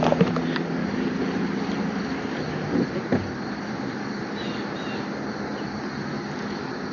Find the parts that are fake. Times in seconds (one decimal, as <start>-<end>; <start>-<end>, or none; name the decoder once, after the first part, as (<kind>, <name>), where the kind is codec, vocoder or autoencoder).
0.8-2.4 (vocoder, BigVGAN v2)